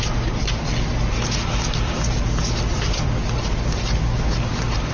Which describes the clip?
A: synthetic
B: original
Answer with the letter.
B